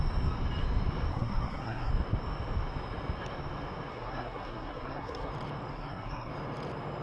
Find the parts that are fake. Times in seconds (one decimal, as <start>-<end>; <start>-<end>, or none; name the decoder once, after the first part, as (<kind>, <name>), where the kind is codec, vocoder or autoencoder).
1.1-1.9 (codec, SNAC); 3.9-5.3; 5.7-6.3